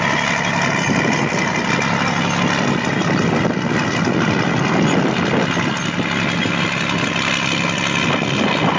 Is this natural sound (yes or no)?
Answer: yes